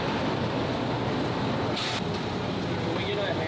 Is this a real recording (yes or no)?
yes